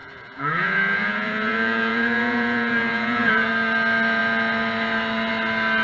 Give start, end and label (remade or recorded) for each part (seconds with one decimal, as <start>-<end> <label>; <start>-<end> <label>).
0.0-3.5 remade; 3.5-5.8 recorded